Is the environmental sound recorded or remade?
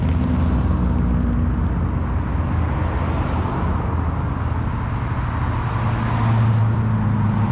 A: recorded